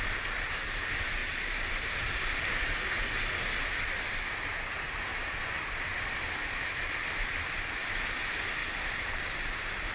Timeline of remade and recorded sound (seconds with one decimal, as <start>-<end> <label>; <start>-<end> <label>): 0.0-1.2 recorded; 1.2-2.5 remade; 2.5-5.1 recorded; 5.1-7.1 remade; 7.1-8.6 recorded; 8.6-9.2 remade; 9.2-9.9 recorded